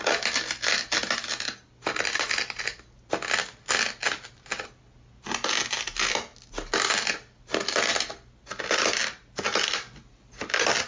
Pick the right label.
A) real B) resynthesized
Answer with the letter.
A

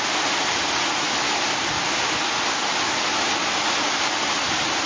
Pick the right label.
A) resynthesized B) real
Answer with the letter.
B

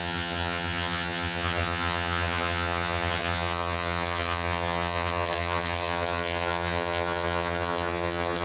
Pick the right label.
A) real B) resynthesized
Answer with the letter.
B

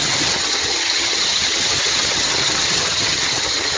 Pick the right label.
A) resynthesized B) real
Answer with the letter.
A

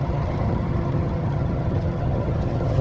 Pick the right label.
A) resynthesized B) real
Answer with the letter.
A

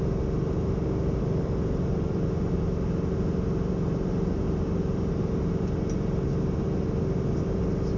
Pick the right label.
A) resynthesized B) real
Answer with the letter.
B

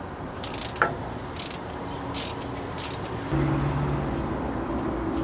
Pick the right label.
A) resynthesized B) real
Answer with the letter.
B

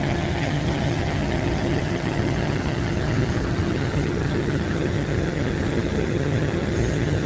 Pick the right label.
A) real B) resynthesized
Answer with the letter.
B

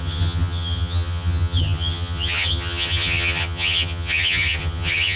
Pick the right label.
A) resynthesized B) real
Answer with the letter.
A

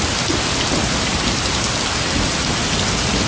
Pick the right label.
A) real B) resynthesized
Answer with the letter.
A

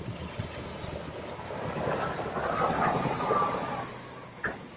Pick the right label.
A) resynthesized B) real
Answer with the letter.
B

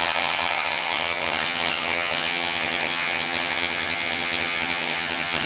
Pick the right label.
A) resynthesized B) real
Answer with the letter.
A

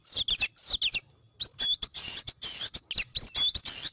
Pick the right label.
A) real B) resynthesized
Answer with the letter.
A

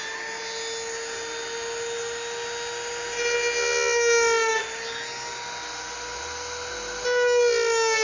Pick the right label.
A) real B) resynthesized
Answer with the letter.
A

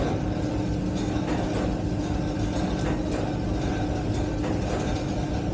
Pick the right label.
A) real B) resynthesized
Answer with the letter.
A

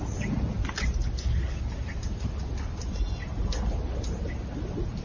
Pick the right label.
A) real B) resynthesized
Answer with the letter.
A